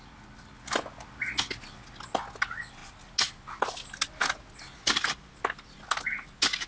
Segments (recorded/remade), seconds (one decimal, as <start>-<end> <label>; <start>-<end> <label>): 0.0-6.7 recorded